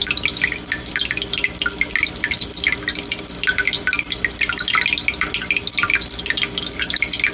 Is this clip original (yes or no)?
yes